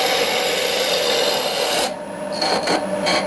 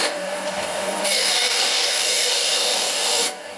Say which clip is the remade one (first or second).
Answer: second